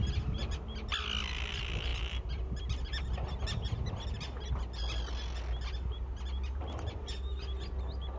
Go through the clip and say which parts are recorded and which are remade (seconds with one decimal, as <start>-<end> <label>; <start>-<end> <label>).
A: 0.0-8.2 recorded